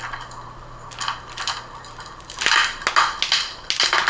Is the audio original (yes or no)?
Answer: yes